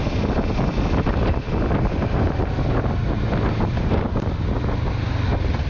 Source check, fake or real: real